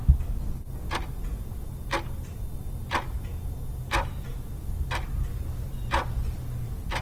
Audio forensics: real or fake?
real